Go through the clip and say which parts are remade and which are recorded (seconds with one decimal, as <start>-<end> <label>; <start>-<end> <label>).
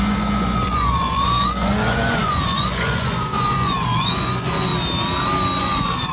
0.0-4.7 remade; 4.7-5.6 recorded; 5.6-6.1 remade